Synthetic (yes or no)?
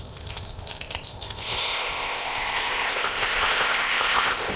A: yes